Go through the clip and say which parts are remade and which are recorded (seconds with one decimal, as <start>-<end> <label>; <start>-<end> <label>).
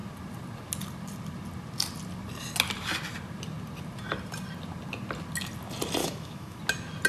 0.0-6.0 recorded; 6.0-6.6 remade; 6.6-7.1 recorded